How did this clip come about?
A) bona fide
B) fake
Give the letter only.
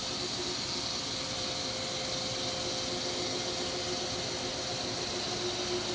A